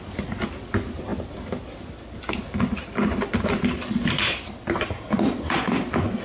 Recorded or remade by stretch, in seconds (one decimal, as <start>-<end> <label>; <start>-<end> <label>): 0.0-1.1 recorded; 1.1-4.5 remade; 4.5-6.2 recorded